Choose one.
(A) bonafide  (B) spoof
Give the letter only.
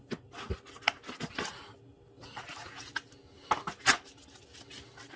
A